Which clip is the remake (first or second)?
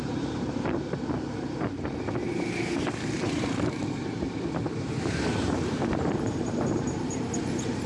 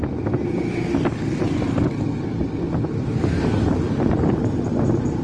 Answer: first